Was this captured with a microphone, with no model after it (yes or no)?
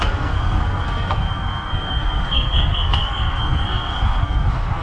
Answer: no